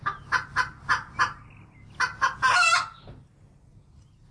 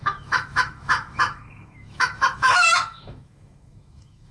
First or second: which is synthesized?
second